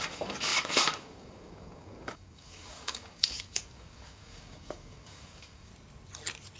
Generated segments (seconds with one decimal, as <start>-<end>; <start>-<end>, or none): 0.0-5.7